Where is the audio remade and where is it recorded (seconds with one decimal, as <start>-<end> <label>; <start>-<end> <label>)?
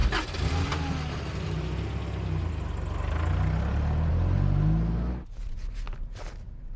0.0-6.8 recorded